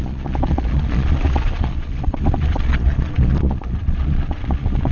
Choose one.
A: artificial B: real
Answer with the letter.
A